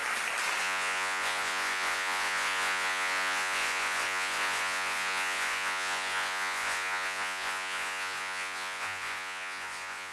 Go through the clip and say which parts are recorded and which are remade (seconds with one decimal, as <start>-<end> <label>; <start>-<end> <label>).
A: 0.0-0.6 recorded; 0.6-10.1 remade